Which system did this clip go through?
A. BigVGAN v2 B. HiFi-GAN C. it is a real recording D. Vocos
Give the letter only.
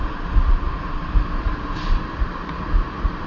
A